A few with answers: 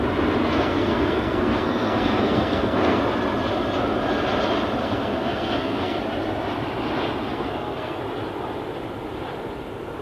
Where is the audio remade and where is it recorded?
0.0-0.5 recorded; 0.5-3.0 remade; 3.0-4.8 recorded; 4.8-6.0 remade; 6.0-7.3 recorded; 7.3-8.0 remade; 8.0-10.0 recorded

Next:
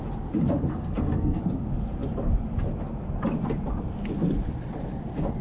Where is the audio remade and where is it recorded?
0.0-0.7 recorded; 0.7-1.4 remade; 1.4-5.4 recorded

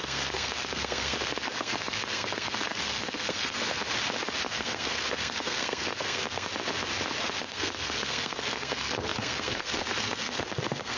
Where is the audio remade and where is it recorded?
0.0-3.8 remade; 3.8-4.4 recorded; 4.4-6.5 remade; 6.5-7.4 recorded; 7.4-11.0 remade